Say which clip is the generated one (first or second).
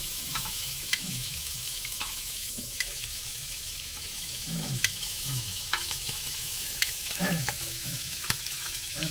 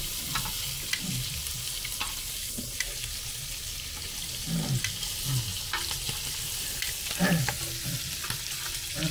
first